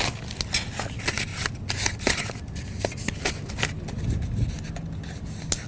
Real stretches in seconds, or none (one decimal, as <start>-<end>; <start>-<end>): 0.0-5.7